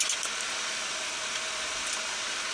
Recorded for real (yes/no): yes